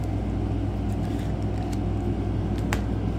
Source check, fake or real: real